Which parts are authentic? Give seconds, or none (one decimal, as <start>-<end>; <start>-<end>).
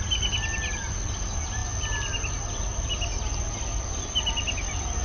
0.0-5.0